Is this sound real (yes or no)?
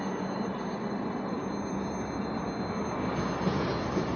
yes